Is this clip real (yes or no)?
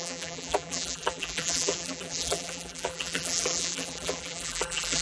no